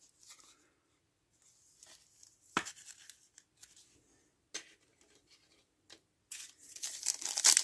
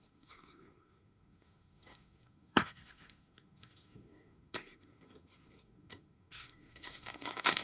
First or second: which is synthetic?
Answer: second